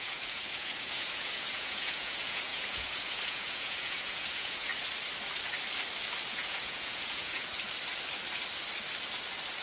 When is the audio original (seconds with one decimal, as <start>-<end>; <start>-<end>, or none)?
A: 4.7-6.3; 7.5-9.6